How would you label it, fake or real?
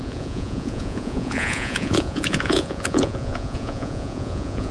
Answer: fake